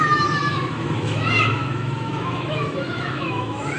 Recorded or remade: remade